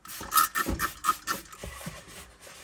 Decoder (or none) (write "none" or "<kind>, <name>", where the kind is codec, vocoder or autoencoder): none